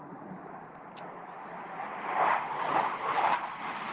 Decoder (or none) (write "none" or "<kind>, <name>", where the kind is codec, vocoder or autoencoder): none